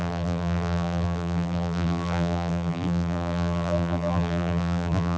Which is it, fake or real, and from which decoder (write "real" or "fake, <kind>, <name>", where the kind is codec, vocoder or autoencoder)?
fake, vocoder, BigVGAN v2